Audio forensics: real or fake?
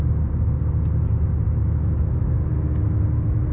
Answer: real